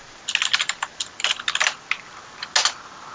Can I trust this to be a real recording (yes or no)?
yes